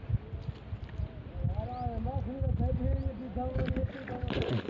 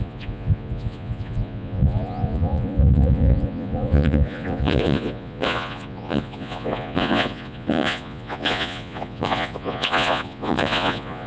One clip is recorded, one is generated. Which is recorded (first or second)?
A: first